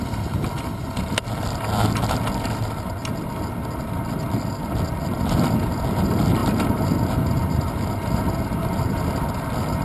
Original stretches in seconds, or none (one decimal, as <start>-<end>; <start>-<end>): 0.0-9.8